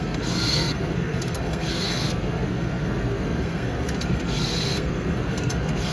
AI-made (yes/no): yes